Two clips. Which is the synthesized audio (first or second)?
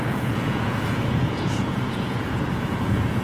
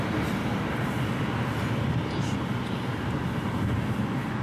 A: first